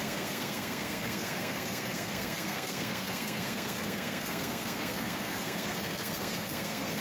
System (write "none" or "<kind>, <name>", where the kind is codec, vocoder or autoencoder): codec, SNAC